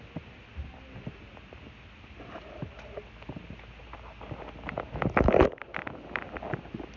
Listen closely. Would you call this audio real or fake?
real